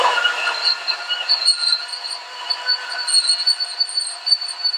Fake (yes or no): no